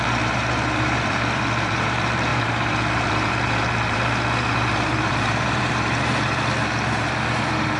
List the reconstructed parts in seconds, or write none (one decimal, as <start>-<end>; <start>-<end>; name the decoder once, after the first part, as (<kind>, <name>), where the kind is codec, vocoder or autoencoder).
0.0-7.8 (vocoder, BigVGAN v2)